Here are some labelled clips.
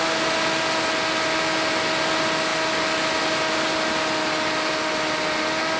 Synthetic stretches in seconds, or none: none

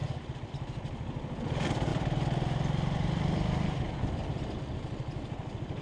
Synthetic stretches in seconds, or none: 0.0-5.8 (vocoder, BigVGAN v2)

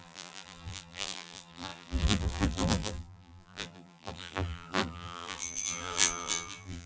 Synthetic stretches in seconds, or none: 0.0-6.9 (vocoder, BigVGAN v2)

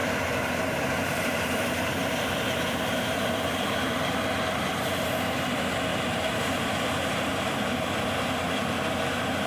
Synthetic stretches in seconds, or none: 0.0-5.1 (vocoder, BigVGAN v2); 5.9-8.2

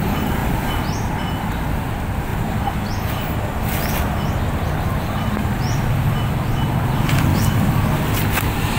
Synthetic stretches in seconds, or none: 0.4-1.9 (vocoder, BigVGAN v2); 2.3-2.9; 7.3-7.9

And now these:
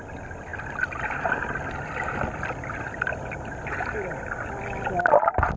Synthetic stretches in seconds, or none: 0.5-3.9 (vocoder, BigVGAN v2)

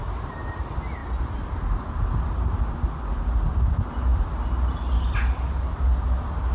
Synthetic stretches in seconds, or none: none